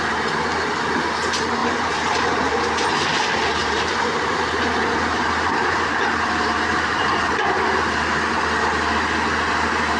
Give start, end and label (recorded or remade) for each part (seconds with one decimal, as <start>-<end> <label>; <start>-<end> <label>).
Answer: 0.0-1.6 recorded; 1.6-2.6 remade; 2.6-3.6 recorded; 3.6-7.3 remade; 7.3-10.0 recorded